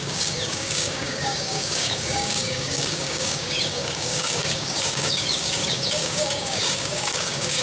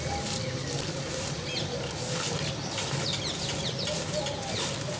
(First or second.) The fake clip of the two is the first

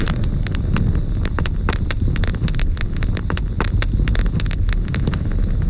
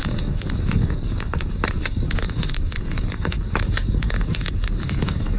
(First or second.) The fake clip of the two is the second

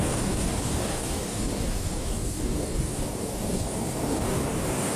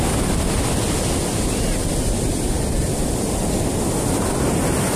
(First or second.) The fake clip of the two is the first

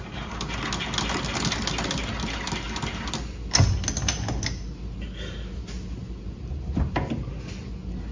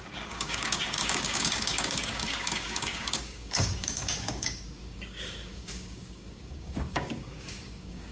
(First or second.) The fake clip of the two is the second